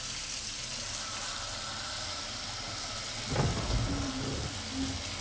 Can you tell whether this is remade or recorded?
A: recorded